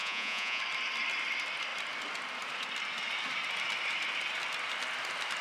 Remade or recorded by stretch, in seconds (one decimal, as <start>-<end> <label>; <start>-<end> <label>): 0.0-0.6 remade; 0.6-5.4 recorded